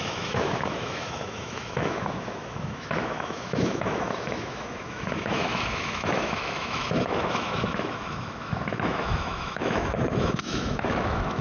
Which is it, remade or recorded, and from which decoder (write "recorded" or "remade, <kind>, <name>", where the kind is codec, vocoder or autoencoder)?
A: remade, autoencoder, DAC-VAE